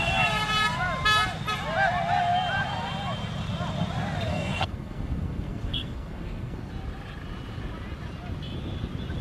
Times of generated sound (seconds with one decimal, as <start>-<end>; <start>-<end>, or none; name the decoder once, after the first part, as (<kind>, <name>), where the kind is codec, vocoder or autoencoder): 4.3-6.7 (codec, SNAC)